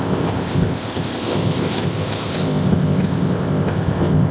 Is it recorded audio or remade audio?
remade